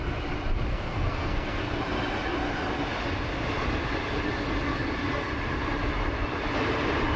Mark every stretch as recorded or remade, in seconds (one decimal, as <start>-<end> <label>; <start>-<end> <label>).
0.0-0.7 recorded; 0.7-1.8 remade; 1.8-7.2 recorded